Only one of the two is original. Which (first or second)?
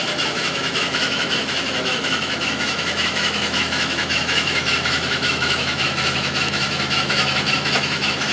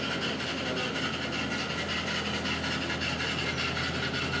second